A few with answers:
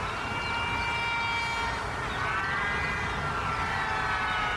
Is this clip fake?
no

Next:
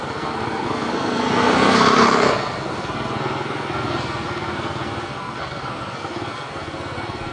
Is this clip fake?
yes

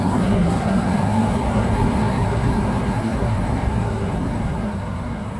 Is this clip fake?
yes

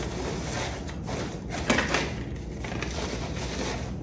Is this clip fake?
no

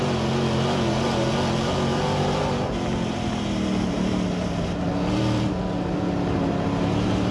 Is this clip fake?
no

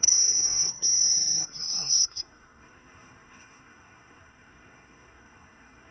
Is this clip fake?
yes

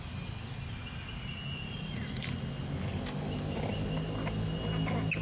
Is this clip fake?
no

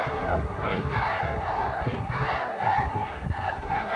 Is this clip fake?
yes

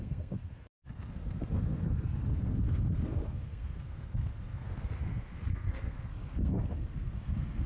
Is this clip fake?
yes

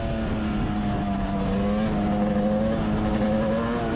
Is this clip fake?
no